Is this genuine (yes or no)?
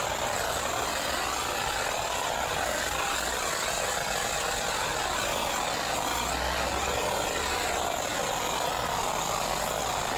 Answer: yes